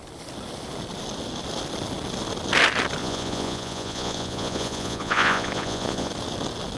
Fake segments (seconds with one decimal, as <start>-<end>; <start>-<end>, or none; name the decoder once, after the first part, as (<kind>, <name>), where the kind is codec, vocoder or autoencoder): 3.0-6.1 (vocoder, Vocos)

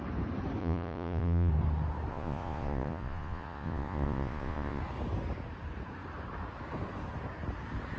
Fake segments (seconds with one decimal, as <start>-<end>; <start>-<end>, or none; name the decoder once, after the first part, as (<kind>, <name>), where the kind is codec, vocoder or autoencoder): 0.6-1.5 (vocoder, Vocos); 2.1-4.8

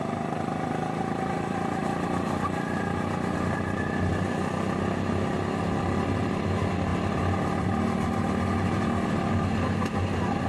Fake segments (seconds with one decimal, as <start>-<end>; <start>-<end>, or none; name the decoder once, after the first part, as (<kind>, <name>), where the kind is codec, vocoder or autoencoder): none

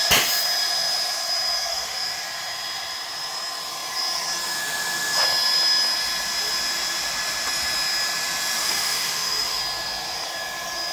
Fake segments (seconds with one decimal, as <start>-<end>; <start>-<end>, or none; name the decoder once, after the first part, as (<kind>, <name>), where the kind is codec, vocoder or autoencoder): 1.7-2.2 (autoencoder, DAC-VAE); 8.6-9.6